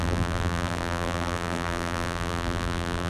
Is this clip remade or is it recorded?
remade